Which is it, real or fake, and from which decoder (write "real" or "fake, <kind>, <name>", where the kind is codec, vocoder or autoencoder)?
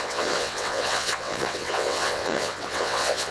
fake, vocoder, WaveNeXt